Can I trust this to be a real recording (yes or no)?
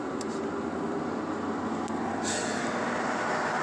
yes